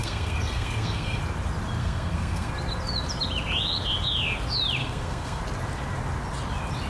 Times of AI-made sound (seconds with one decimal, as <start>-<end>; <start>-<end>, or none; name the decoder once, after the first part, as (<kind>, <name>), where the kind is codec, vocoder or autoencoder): 0.0-1.2 (codec, SNAC); 1.8-2.5; 4.8-5.4